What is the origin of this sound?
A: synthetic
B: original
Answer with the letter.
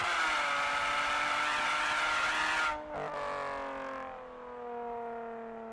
B